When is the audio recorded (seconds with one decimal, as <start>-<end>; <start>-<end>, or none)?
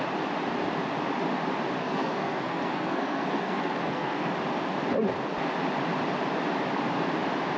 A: 0.0-1.8; 4.3-7.6